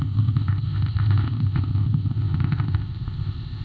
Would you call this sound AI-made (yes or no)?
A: yes